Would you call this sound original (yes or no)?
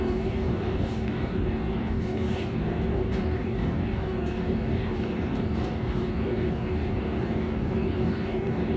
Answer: no